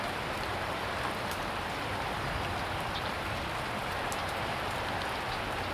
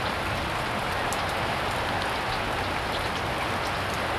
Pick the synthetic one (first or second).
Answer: first